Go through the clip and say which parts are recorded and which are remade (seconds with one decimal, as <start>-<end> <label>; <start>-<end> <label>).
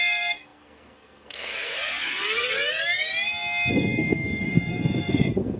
0.0-3.1 remade; 3.1-3.7 recorded; 3.7-5.6 remade